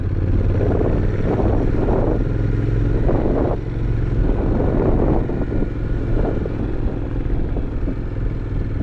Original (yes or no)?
yes